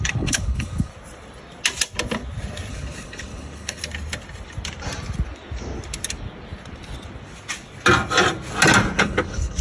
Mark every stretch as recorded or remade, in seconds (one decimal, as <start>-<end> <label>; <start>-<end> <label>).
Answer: 0.0-0.9 remade; 0.9-2.7 recorded; 2.7-3.8 remade; 3.8-9.0 recorded; 9.0-9.6 remade